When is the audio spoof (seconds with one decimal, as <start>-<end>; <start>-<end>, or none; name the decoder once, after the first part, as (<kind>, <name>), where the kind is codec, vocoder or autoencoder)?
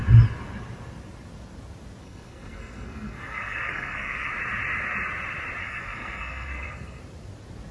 2.0-4.3 (codec, SNAC); 5.6-7.0